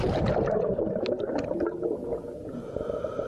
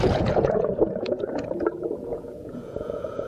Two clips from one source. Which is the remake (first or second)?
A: second